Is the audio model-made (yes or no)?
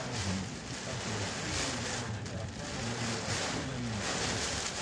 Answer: no